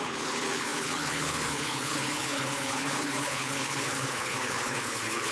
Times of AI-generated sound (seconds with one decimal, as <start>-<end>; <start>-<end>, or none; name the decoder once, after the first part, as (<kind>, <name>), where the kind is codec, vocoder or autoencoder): 0.0-5.3 (codec, HILCodec)